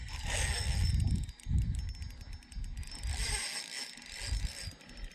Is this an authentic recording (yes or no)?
yes